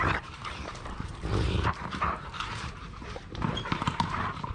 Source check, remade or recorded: remade